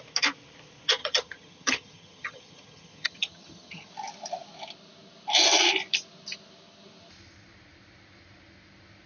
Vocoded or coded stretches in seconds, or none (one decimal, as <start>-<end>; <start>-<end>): 1.0-3.9